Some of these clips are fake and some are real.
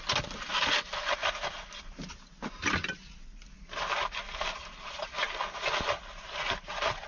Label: real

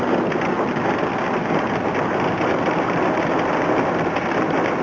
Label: real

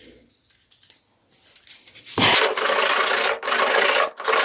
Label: real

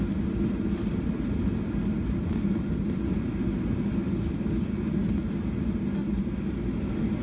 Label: real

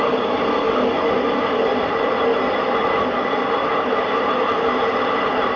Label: real